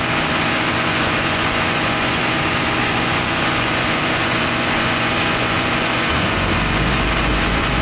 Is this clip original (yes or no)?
no